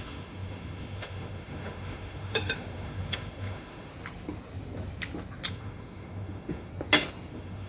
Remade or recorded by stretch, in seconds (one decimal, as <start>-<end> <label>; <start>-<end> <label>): 0.0-3.9 remade; 3.9-5.5 recorded; 5.5-6.7 remade; 6.7-7.3 recorded; 7.3-7.7 remade